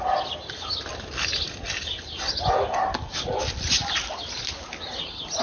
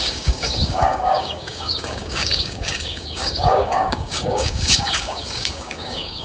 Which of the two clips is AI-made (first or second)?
second